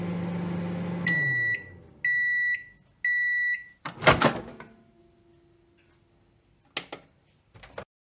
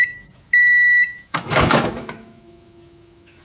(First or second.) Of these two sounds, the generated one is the second